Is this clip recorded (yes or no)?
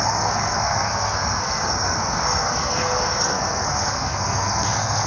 no